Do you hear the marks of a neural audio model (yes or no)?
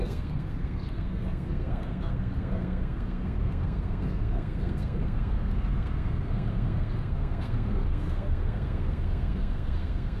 yes